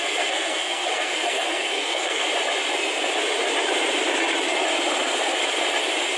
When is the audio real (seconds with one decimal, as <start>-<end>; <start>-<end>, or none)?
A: 2.3-6.2